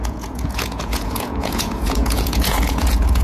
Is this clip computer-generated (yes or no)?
yes